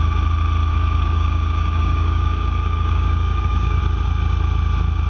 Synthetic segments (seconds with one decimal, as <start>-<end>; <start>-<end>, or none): 0.7-3.8